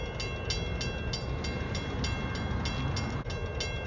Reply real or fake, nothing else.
real